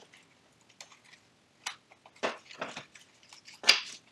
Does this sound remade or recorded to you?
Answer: recorded